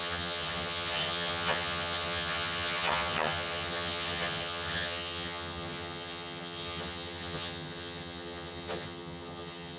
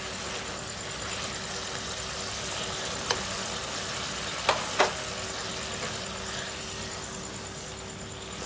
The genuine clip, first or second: second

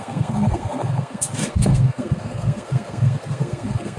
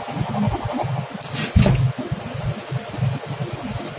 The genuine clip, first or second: second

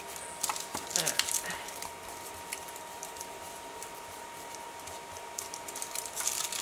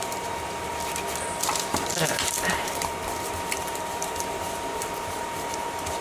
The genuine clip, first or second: first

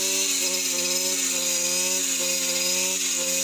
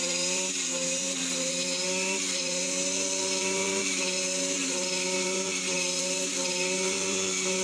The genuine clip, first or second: first